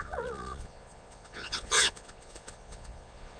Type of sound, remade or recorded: remade